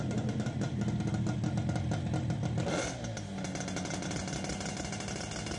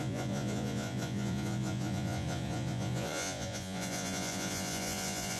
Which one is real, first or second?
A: first